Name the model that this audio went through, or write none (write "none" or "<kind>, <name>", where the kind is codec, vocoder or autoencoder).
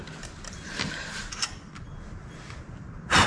none